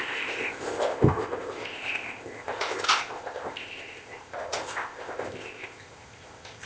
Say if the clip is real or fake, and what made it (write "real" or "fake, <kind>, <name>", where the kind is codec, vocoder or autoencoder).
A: fake, codec, ZipCodec